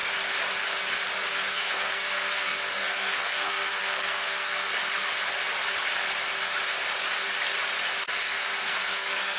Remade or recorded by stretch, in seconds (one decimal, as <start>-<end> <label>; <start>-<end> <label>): 0.0-1.3 recorded; 1.3-4.7 remade; 4.7-8.0 recorded; 8.0-9.4 remade